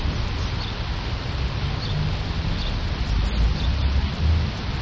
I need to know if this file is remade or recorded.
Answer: recorded